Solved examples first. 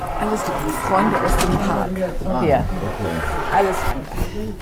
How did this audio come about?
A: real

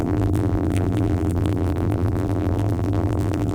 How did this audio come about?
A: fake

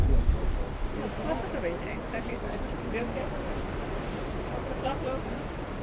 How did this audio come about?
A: fake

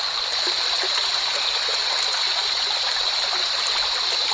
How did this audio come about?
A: fake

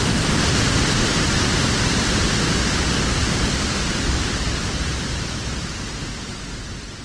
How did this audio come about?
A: fake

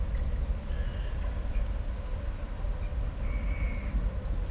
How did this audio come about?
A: real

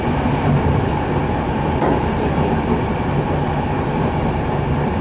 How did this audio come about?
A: real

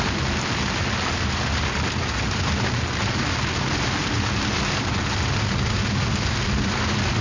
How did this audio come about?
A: real